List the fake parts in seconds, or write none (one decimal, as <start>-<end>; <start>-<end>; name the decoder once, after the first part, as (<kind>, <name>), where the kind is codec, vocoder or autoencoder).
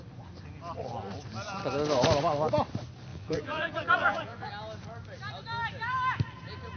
3.1-4.5 (vocoder, Vocos)